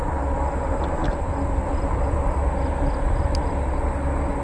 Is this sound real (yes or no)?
yes